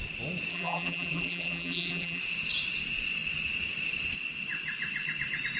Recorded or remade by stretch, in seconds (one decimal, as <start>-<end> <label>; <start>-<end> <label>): 0.0-0.5 recorded; 0.5-2.2 remade; 2.2-5.6 recorded